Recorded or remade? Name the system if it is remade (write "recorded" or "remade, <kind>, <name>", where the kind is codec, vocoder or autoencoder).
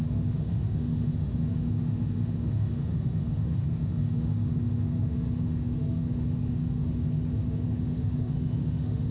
remade, autoencoder, DAC-VAE